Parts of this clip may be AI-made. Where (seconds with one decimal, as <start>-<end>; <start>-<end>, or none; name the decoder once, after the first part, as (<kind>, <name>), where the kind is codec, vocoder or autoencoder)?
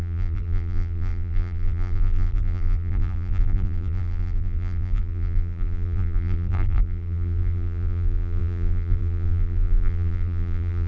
0.0-10.9 (vocoder, BigVGAN v2)